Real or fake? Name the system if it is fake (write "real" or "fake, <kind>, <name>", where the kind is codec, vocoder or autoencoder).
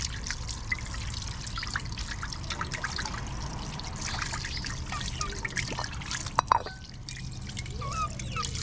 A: real